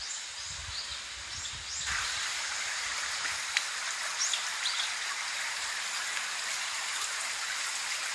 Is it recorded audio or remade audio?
recorded